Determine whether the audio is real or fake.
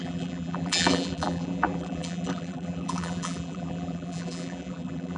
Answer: fake